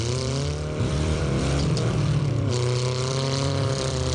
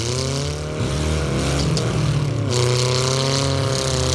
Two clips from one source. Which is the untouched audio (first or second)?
second